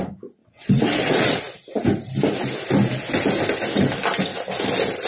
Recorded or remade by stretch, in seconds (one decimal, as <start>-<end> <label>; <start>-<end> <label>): 0.0-0.4 recorded; 0.4-1.4 remade; 1.4-5.1 recorded

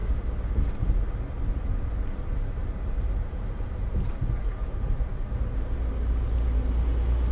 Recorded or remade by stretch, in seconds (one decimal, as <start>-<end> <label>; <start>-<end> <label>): 0.0-1.5 recorded; 1.5-2.6 remade; 2.6-3.2 recorded; 3.2-5.1 remade; 5.1-7.3 recorded

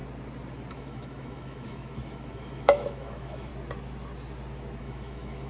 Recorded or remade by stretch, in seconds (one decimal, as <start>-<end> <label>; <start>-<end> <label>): 0.0-0.7 recorded; 0.7-3.5 remade; 3.5-4.8 recorded; 4.8-5.5 remade

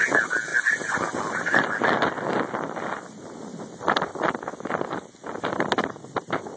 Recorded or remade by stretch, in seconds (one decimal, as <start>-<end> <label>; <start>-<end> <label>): 0.0-6.6 recorded

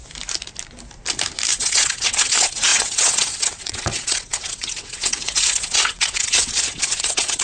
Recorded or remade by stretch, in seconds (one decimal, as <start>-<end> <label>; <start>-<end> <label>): 0.0-1.5 recorded; 1.5-7.4 remade

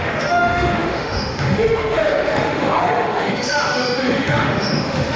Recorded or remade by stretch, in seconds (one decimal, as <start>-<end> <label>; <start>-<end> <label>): 0.0-5.2 remade

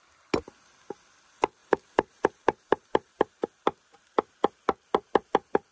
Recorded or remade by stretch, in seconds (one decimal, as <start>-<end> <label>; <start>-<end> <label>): 0.0-1.6 recorded; 1.6-3.3 remade; 3.3-5.7 recorded

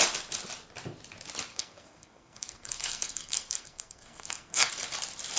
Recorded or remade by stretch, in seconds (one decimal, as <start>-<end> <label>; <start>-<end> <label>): 0.0-1.5 recorded; 1.5-4.7 remade; 4.7-5.4 recorded